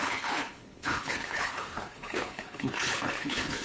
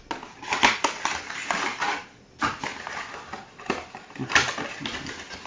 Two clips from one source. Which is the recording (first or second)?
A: second